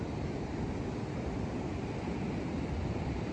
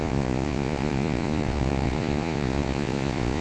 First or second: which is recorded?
first